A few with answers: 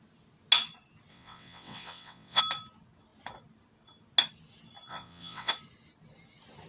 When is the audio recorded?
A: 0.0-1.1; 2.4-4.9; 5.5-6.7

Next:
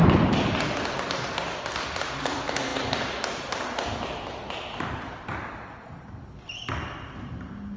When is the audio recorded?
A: 0.0-7.8

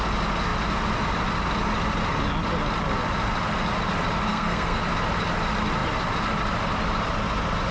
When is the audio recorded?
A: 0.0-4.3; 4.8-7.7